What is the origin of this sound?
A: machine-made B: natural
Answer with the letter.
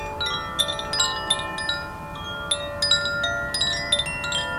B